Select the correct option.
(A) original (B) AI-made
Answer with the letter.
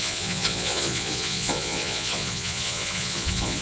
B